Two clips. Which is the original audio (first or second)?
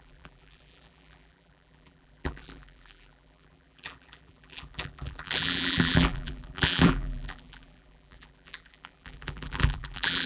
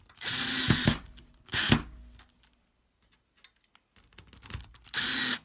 second